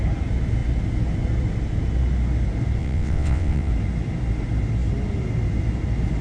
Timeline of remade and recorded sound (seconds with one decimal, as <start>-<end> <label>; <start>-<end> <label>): 0.0-2.8 recorded; 2.8-3.7 remade; 3.7-6.2 recorded